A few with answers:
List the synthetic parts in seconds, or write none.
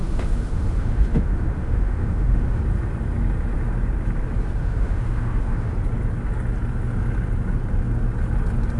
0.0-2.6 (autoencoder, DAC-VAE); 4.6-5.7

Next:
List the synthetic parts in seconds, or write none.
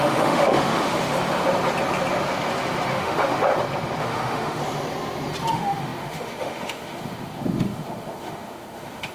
0.0-1.0 (autoencoder, DAC-VAE); 2.9-3.5; 4.0-4.6; 5.5-9.1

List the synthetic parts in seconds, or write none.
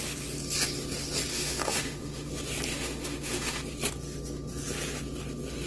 1.3-2.3 (autoencoder, DAC-VAE); 2.7-3.6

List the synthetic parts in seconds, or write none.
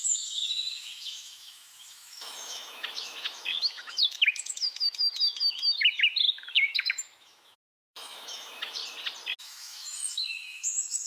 0.0-8.8 (autoencoder, DAC-VAE); 9.4-11.1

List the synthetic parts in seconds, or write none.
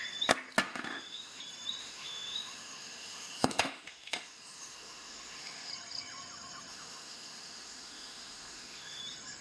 0.7-1.4 (autoencoder, DAC-VAE); 1.8-5.7; 6.7-9.0